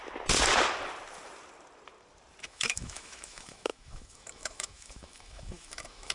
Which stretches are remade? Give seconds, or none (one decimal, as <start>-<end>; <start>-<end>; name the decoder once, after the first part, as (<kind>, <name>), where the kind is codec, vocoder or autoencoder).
2.4-6.1 (autoencoder, DAC-VAE)